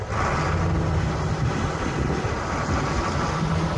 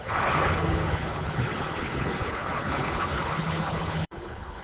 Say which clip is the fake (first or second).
second